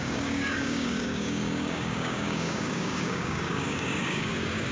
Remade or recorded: remade